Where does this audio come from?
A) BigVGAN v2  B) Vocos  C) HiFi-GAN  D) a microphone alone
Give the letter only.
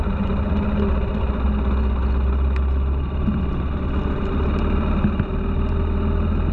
D